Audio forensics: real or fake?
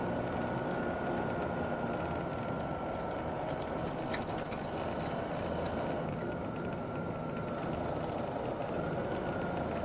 real